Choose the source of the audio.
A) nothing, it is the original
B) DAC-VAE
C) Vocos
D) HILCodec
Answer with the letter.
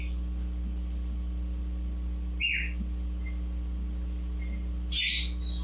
A